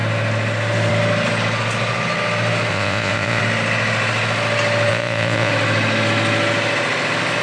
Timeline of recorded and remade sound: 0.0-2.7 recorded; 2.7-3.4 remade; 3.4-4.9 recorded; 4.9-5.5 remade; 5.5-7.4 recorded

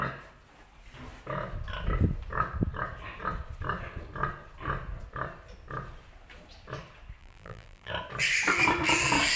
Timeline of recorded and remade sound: 0.0-7.2 recorded; 7.2-7.9 remade; 7.9-9.4 recorded